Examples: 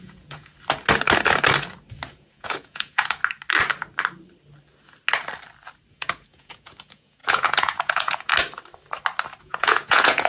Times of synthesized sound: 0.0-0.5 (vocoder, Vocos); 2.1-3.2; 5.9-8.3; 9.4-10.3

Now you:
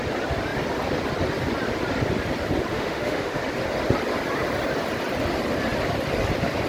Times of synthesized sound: 2.7-3.4 (autoencoder, DAC-VAE)

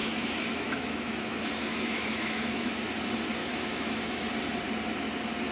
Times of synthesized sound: 0.0-2.7 (autoencoder, DAC-VAE); 3.4-4.3

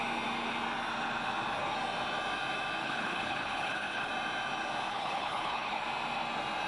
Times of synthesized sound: 2.8-4.1 (codec, HILCodec); 4.9-5.8